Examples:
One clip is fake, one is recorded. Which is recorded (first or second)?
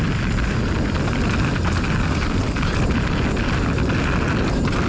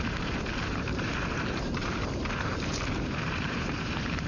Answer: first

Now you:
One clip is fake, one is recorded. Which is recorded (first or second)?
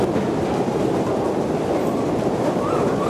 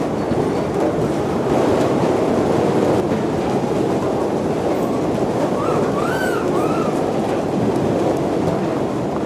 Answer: second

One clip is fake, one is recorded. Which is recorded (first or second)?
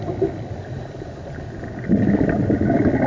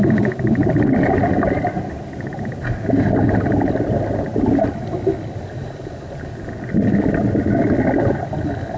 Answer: second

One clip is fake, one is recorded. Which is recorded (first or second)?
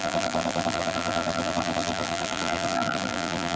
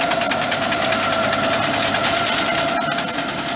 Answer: second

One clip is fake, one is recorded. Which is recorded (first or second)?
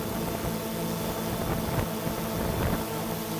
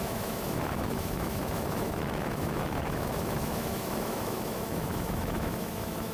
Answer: first